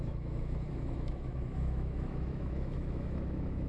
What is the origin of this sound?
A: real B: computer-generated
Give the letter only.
B